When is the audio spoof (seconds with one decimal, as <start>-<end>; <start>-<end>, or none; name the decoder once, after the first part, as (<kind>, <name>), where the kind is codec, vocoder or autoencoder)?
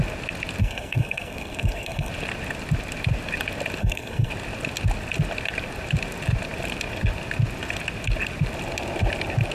0.6-2.1 (codec, SNAC); 3.8-4.3